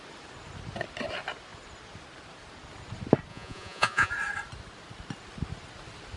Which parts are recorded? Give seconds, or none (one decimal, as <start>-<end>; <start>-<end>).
0.0-3.3; 4.1-6.2